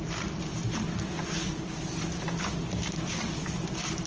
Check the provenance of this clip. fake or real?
real